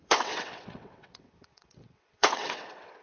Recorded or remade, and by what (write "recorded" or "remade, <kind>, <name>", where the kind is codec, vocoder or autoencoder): remade, vocoder, WaveNeXt